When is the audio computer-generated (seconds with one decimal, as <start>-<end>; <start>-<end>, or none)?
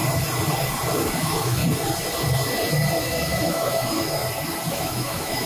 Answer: 1.2-1.6; 3.0-4.2; 4.7-5.5